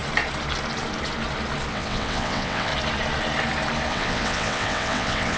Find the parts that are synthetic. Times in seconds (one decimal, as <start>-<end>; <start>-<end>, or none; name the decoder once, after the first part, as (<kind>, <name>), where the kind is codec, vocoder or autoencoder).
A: 1.7-2.7 (vocoder, WaveNeXt); 3.9-5.4